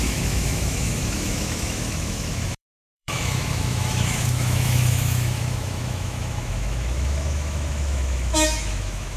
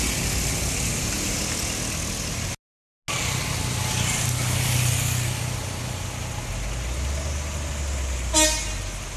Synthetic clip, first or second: first